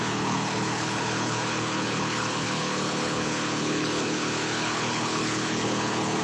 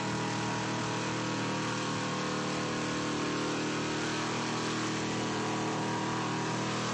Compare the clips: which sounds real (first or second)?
second